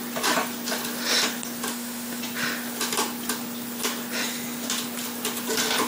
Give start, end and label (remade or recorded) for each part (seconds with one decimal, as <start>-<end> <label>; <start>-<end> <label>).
0.0-1.7 recorded; 1.7-2.2 remade; 2.2-5.9 recorded